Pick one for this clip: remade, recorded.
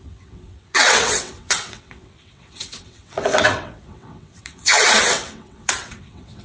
remade